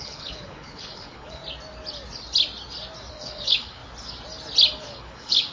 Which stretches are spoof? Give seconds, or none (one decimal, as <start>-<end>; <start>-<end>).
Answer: 0.0-1.4; 3.1-3.8; 4.8-5.5